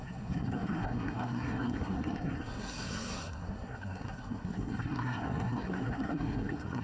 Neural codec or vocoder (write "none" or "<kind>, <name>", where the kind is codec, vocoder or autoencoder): codec, SNAC